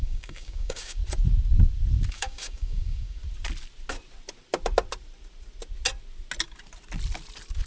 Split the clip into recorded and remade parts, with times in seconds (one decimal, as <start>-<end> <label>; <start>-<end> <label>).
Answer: 0.0-1.0 remade; 1.0-2.1 recorded; 2.1-3.2 remade; 3.2-7.7 recorded